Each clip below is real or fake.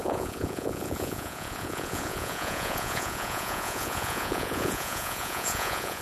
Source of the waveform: fake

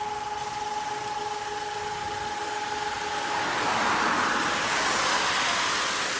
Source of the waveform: real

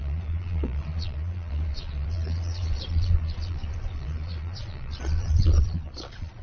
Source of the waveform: fake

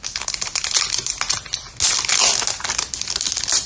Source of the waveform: real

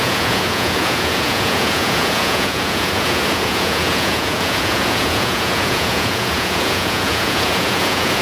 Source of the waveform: fake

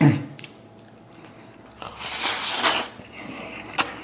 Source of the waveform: real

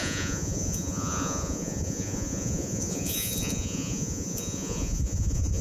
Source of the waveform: fake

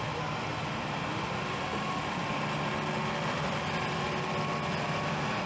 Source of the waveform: real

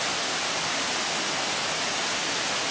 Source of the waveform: real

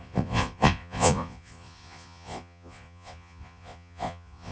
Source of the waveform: fake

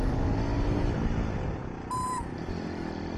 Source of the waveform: real